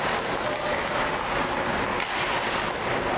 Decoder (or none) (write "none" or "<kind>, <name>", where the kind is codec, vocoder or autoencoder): none